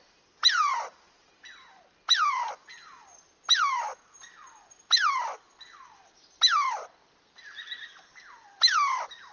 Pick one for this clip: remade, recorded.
recorded